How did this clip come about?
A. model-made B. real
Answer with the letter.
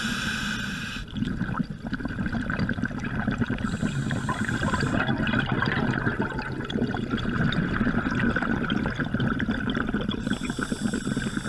B